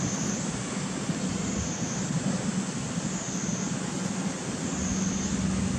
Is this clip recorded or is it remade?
recorded